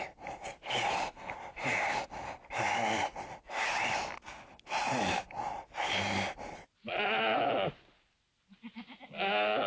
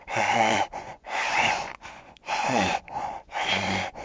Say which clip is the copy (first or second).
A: second